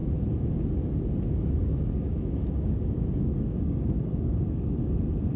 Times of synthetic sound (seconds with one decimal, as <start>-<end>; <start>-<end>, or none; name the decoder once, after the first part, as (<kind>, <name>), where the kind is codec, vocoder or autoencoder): 1.7-4.9 (codec, DAC)